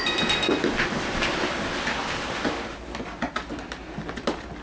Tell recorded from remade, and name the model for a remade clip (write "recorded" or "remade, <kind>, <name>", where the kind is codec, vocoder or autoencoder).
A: recorded